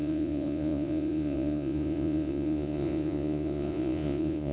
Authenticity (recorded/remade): remade